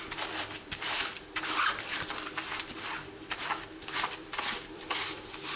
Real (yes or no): no